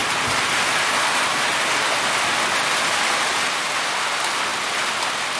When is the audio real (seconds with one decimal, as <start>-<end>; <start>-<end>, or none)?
0.0-5.4